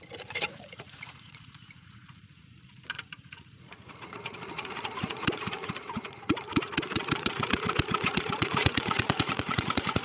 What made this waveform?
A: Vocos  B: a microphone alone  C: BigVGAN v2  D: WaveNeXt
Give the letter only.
A